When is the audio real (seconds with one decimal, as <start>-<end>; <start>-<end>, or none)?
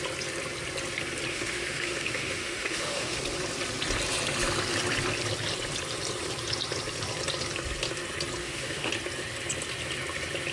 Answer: 0.0-1.3; 3.2-8.4; 8.9-10.5